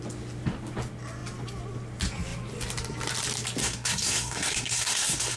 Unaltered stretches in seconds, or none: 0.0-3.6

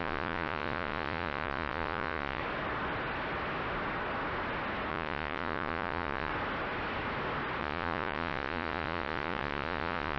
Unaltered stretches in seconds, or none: 2.4-4.9; 6.3-7.6